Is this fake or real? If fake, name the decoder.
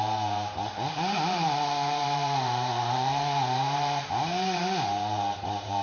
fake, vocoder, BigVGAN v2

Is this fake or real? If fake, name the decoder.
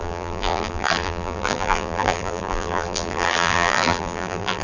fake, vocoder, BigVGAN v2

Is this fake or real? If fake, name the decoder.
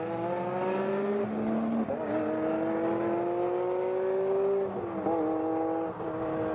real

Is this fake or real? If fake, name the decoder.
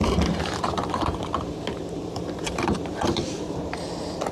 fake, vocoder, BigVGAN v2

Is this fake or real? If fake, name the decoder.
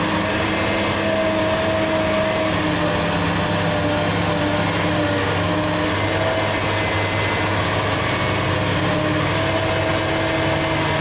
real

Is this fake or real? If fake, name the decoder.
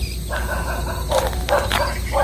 real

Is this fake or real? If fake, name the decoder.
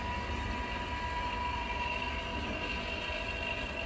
real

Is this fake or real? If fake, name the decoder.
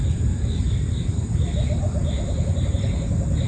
fake, vocoder, BigVGAN v2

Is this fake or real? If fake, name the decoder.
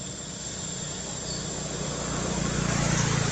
real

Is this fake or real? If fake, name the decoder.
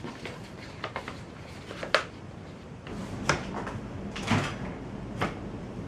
fake, vocoder, BigVGAN v2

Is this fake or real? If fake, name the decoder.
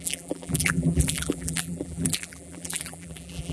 fake, vocoder, BigVGAN v2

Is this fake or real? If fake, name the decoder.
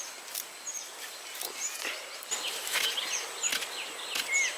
real